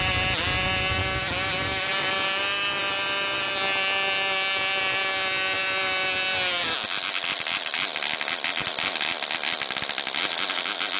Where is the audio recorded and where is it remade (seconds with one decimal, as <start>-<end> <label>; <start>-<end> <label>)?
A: 0.0-11.0 recorded